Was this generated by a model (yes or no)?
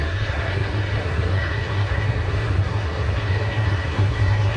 yes